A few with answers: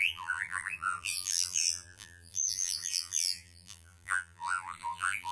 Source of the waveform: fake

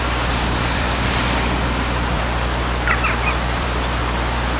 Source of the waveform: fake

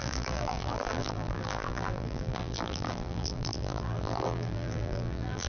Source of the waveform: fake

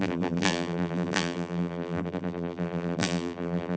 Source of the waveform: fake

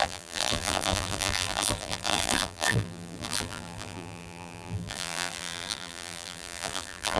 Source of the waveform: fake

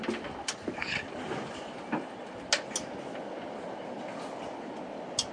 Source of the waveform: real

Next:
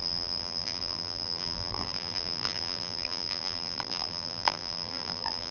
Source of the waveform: fake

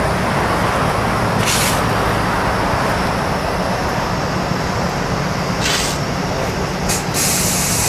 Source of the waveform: real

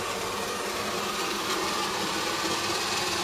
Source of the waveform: fake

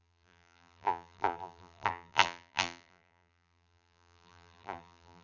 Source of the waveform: fake